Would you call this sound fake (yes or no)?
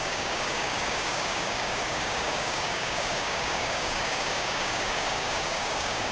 yes